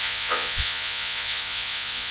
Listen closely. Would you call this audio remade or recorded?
remade